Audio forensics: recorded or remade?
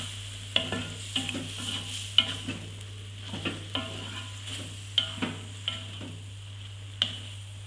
recorded